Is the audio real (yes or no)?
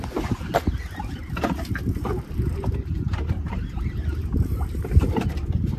no